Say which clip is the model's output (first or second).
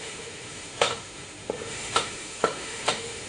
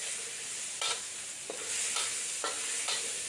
first